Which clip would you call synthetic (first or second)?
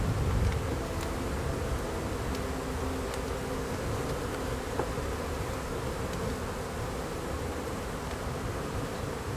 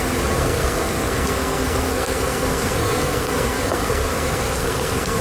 second